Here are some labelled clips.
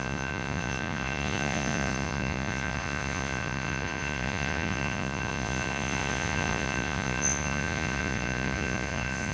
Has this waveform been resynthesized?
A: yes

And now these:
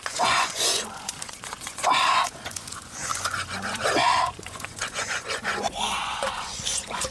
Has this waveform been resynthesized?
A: yes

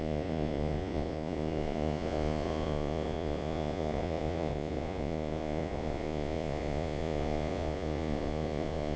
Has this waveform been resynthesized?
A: yes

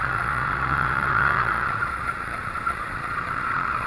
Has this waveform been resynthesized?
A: yes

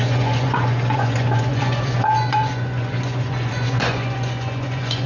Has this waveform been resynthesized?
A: yes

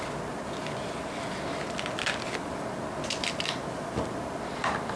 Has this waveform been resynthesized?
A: no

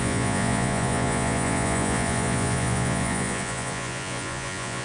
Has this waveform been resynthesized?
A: yes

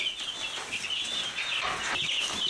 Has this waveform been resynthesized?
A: no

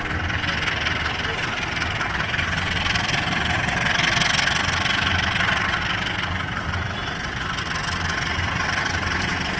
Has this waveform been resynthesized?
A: no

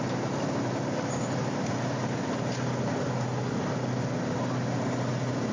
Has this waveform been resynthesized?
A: no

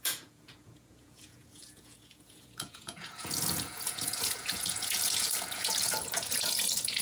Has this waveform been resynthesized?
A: yes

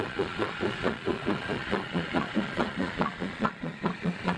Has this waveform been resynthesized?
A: yes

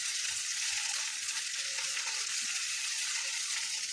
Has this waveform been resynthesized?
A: yes